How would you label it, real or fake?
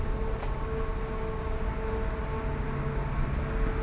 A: real